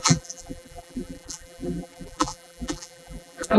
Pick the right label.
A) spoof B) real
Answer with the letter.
A